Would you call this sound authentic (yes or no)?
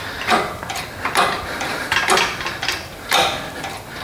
no